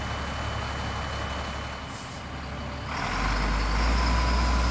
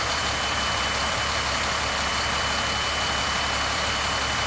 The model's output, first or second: second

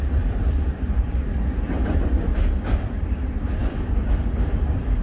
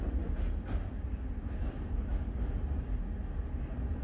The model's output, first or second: first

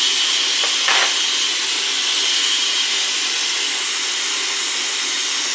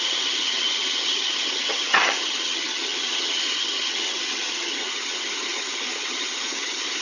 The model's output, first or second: second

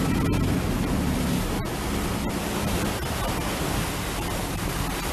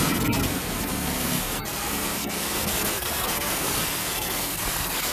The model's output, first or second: second